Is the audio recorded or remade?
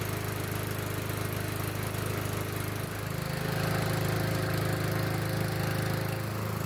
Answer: recorded